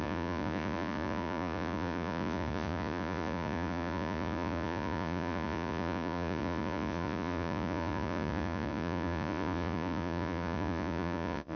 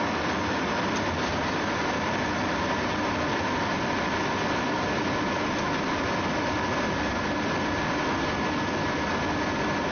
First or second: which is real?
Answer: second